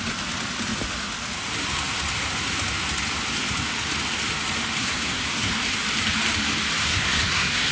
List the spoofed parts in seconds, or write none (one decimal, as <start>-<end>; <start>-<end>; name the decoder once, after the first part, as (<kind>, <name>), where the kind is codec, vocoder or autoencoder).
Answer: 4.8-5.5 (codec, SNAC); 6.8-7.7